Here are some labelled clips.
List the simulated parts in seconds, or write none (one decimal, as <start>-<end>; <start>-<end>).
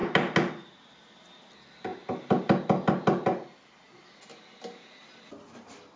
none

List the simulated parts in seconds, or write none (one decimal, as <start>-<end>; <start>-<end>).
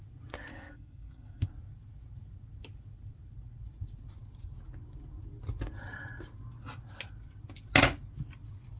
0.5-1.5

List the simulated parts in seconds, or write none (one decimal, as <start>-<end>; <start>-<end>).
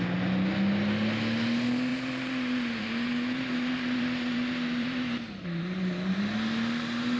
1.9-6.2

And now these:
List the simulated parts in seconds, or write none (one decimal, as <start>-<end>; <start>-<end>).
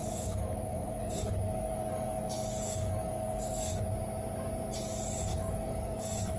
0.0-3.8; 5.3-6.4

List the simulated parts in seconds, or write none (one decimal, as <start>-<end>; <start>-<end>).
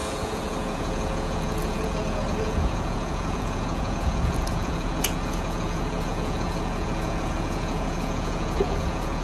0.0-9.2